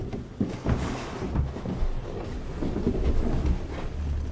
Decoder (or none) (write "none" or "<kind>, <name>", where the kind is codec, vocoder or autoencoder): none